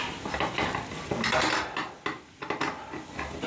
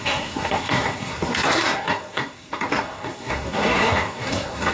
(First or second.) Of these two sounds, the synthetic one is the second